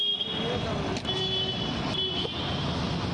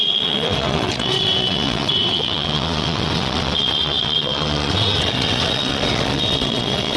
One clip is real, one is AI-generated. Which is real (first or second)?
first